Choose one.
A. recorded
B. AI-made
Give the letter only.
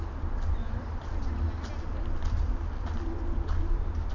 A